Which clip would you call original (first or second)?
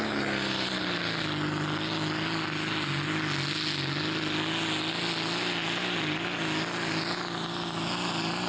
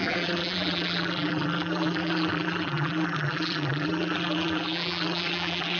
first